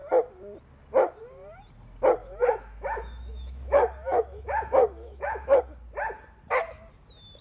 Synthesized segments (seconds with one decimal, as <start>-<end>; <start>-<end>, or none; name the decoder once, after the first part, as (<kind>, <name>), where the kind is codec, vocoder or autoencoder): 2.2-5.6 (autoencoder, DAC-VAE)